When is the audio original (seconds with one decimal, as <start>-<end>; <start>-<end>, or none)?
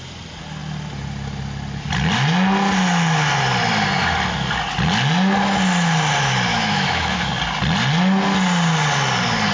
0.0-6.5; 7.3-9.5